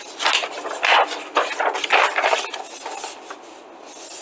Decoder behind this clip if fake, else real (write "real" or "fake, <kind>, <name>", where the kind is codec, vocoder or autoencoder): real